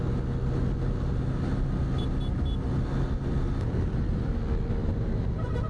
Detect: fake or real real